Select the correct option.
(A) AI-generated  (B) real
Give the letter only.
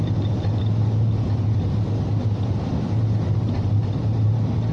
B